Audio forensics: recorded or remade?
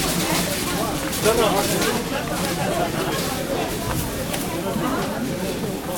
recorded